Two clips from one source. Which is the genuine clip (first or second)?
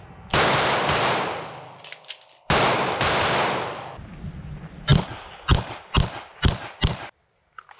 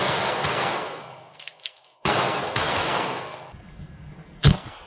first